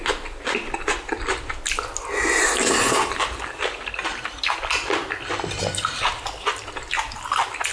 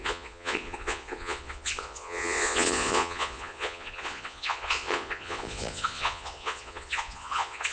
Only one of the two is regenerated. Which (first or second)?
second